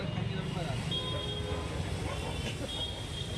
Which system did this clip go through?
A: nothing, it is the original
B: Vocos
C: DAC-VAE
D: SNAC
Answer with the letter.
A